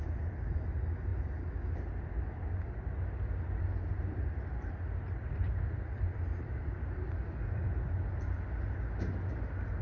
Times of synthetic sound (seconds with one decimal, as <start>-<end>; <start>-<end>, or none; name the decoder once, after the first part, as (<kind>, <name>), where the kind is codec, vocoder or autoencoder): none